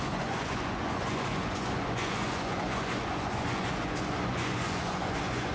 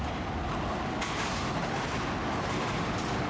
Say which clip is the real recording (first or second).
second